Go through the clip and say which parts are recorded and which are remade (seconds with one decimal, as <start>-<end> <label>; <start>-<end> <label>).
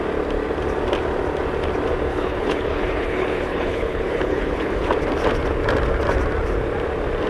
0.0-2.1 recorded; 2.1-4.9 remade; 4.9-7.3 recorded